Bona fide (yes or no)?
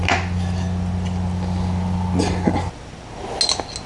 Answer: yes